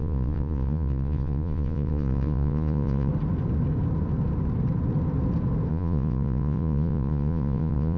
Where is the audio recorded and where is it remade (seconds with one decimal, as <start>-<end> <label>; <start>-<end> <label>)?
0.0-3.1 remade; 3.1-5.7 recorded; 5.7-8.0 remade